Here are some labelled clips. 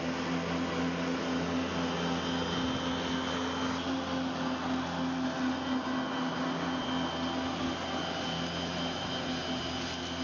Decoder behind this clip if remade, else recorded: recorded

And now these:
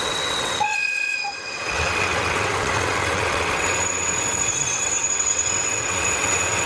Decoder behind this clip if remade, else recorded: remade, vocoder, WaveNeXt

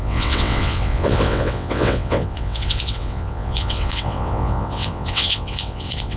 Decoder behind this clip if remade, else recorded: remade, vocoder, WaveNeXt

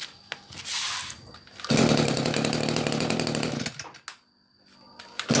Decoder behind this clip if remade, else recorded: recorded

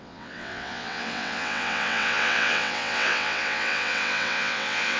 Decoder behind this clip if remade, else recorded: remade, vocoder, WaveNeXt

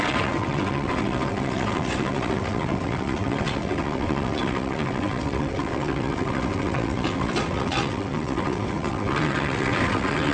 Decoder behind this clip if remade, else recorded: remade, vocoder, WaveNeXt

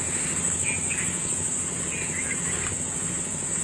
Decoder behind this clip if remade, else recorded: recorded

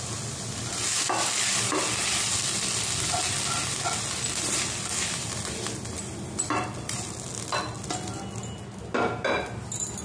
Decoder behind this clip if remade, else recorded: recorded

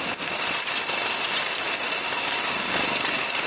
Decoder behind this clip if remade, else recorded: recorded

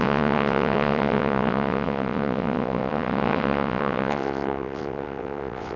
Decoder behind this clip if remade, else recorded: remade, vocoder, WaveNeXt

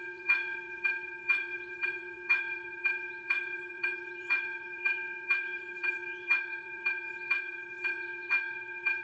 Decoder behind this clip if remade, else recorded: remade, vocoder, WaveNeXt